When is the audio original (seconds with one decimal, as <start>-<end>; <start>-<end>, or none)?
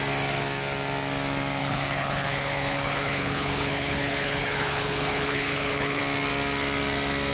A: 0.0-1.6; 6.0-7.3